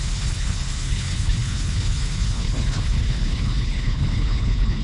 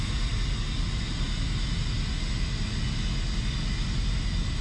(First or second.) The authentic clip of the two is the second